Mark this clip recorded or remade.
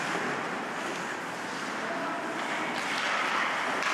recorded